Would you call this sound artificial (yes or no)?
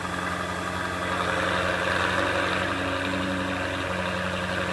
no